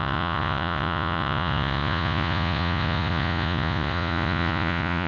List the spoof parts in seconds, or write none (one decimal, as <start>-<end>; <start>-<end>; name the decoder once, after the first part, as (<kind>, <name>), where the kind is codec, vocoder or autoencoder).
0.0-5.1 (vocoder, Vocos)